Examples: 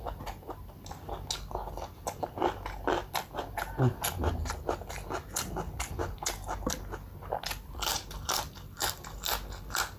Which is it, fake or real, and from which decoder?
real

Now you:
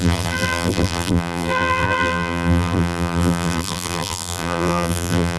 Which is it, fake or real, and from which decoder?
fake, vocoder, BigVGAN v2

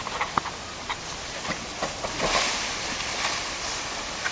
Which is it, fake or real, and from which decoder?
real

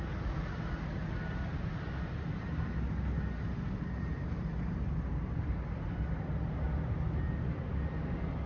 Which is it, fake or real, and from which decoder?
real